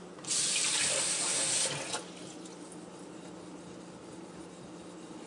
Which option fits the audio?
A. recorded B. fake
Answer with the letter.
A